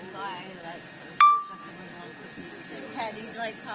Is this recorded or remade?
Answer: recorded